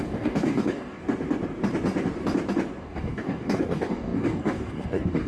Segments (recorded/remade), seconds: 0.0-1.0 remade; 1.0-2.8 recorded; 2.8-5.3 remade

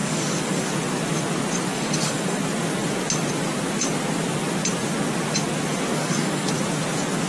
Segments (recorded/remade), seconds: 0.0-0.6 remade; 0.6-1.7 recorded; 1.7-2.4 remade; 2.4-5.9 recorded; 5.9-6.5 remade; 6.5-7.3 recorded

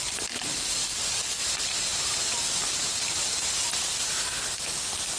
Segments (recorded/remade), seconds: 0.0-0.8 recorded; 0.8-1.4 remade; 1.4-5.2 recorded

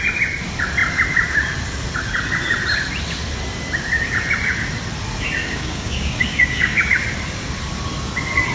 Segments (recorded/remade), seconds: 0.0-5.4 recorded; 5.4-6.9 remade; 6.9-8.5 recorded

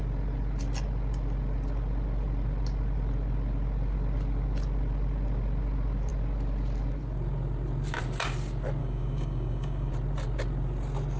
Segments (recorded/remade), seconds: 0.0-8.8 recorded; 8.8-9.9 remade; 9.9-11.2 recorded

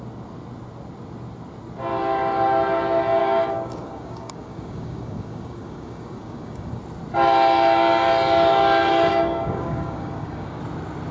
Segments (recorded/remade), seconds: 0.0-3.2 recorded; 3.2-6.8 remade; 6.8-9.1 recorded; 9.1-10.6 remade; 10.6-11.1 recorded

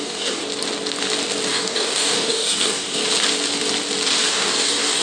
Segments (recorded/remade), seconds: 0.0-0.4 remade; 0.4-1.5 recorded; 1.5-3.0 remade; 3.0-4.3 recorded; 4.3-5.0 remade